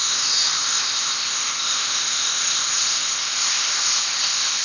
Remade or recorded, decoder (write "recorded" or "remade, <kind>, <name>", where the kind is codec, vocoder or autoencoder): remade, codec, ZipCodec